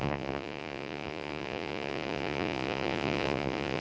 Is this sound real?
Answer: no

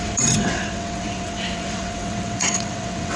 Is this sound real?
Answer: no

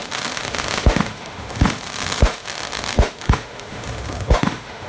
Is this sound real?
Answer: no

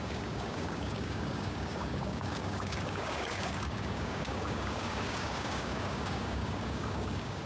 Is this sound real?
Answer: no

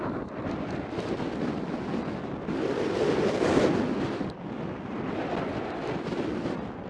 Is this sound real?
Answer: yes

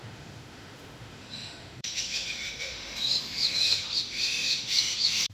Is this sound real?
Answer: no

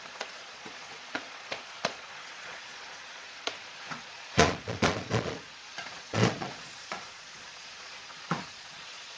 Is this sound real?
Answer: no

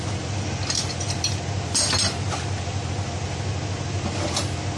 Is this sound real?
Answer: yes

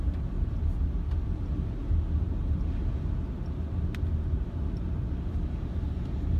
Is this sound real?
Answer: yes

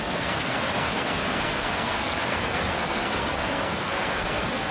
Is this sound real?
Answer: no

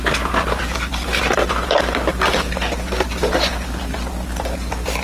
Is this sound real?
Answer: yes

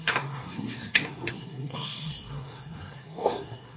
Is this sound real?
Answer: no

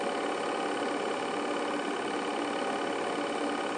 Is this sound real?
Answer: yes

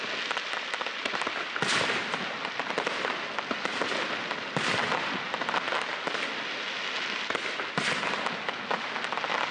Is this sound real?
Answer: yes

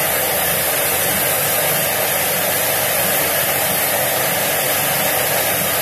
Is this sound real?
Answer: yes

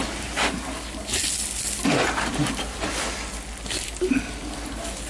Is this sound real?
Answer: yes